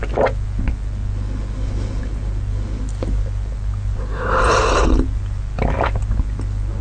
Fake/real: real